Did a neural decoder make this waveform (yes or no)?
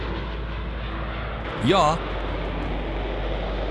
no